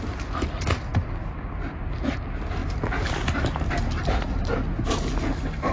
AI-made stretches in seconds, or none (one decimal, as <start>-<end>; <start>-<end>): none